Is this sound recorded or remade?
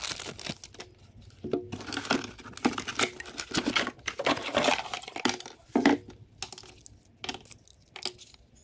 recorded